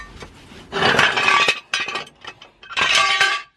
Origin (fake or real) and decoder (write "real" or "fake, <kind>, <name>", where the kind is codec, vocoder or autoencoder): real